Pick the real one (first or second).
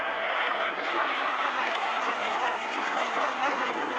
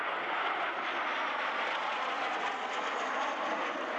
second